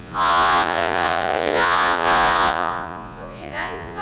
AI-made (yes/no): yes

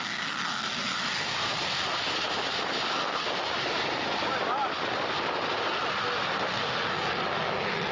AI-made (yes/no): no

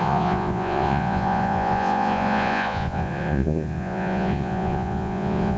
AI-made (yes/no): yes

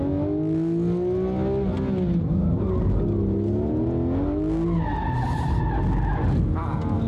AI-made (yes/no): no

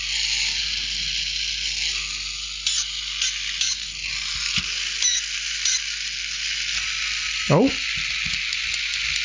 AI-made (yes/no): no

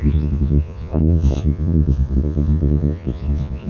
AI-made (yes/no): yes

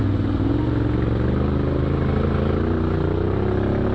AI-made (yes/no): no